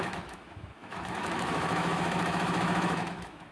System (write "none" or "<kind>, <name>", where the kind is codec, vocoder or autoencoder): autoencoder, DAC-VAE